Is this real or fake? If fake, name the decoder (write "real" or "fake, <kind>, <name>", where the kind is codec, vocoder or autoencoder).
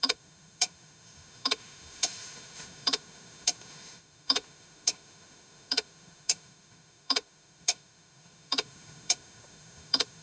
fake, autoencoder, DAC-VAE